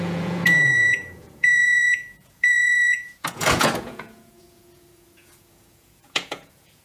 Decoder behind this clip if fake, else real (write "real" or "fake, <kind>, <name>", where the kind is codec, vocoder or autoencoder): fake, vocoder, Vocos